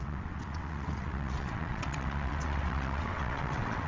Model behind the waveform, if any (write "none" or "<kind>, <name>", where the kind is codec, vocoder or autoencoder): vocoder, WaveNeXt